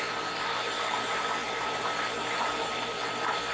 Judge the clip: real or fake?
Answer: fake